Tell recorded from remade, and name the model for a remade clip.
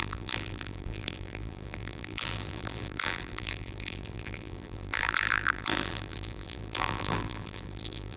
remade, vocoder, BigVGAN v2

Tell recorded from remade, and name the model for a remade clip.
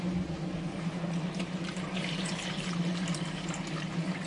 remade, vocoder, BigVGAN v2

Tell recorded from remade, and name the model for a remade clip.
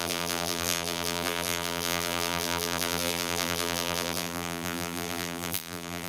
remade, vocoder, BigVGAN v2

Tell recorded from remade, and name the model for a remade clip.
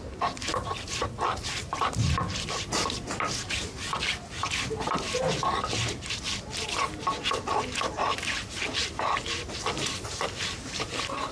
remade, vocoder, BigVGAN v2